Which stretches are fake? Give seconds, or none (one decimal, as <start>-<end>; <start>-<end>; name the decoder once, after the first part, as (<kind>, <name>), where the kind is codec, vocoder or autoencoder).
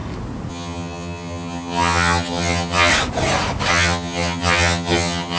0.5-2.9 (vocoder, HiFi-GAN); 3.7-5.4